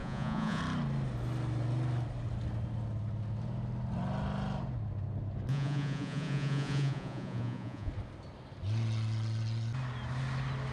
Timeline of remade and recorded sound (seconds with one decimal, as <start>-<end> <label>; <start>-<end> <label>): 0.0-0.6 remade; 0.6-5.5 recorded; 5.5-7.9 remade; 7.9-10.7 recorded